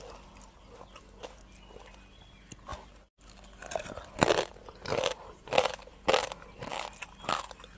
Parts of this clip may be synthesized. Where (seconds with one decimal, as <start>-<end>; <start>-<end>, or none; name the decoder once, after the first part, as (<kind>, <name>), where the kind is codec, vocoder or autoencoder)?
none